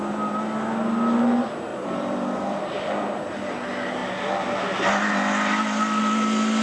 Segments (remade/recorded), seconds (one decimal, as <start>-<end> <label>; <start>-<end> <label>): 0.0-1.7 recorded; 1.7-2.6 remade; 2.6-6.6 recorded